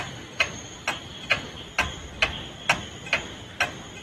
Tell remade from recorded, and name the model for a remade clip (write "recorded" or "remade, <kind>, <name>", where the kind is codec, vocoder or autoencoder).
recorded